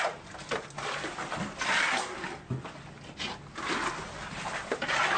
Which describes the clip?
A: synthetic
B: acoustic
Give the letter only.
B